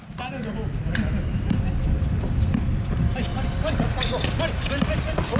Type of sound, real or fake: real